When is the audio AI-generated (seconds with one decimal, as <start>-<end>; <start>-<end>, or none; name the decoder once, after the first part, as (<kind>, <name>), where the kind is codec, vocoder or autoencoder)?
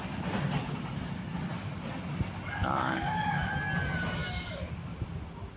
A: 2.6-3.5 (autoencoder, DAC-VAE)